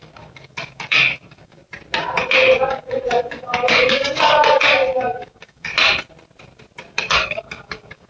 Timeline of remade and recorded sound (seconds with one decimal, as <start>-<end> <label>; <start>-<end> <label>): 0.0-1.6 remade; 1.6-2.7 recorded; 2.7-5.7 remade; 5.7-6.9 recorded; 6.9-8.1 remade